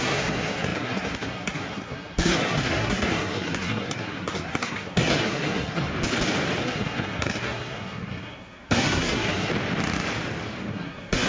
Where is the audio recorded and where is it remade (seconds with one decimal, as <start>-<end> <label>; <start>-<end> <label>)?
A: 0.0-5.9 remade; 5.9-6.6 recorded; 6.6-9.5 remade; 9.5-10.7 recorded; 10.7-11.3 remade